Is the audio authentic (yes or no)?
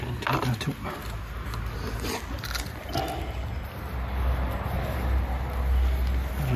yes